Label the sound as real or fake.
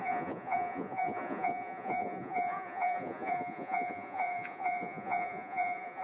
fake